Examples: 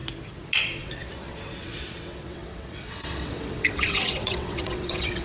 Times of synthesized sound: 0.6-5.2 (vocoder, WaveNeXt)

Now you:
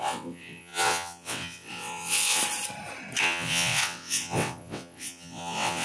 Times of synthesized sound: 0.0-2.4 (vocoder, WaveNeXt); 3.2-5.8